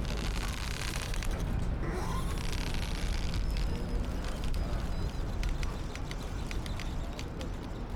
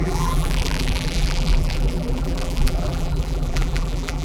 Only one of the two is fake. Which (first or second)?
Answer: second